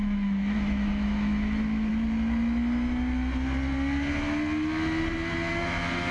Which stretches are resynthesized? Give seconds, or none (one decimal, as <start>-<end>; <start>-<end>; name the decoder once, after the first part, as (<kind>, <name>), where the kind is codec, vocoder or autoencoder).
0.0-1.9 (autoencoder, DAC-VAE); 5.5-6.1

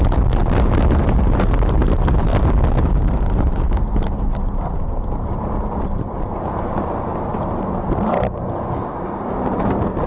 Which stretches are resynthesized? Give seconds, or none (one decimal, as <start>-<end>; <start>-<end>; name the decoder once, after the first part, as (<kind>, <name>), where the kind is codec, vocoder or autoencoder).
0.0-2.3 (vocoder, BigVGAN v2); 2.9-10.1